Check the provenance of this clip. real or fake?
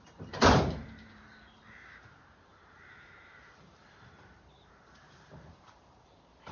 fake